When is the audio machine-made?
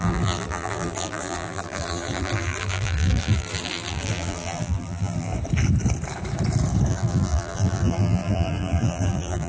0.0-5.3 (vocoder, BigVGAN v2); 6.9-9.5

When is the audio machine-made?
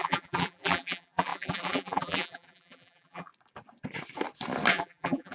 0.0-3.3 (vocoder, BigVGAN v2); 4.7-5.3